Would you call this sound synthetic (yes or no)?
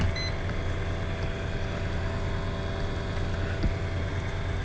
no